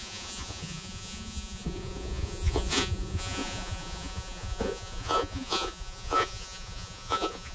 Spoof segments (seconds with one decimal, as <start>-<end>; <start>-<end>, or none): 0.0-7.5